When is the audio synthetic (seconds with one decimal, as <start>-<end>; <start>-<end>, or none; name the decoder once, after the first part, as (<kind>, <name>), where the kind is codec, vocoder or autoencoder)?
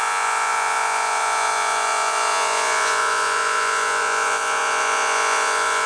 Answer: 0.0-5.9 (vocoder, Vocos)